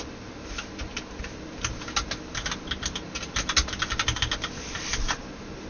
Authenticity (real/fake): real